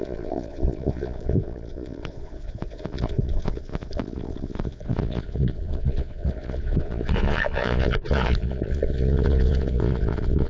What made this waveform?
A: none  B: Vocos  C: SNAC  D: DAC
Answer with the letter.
B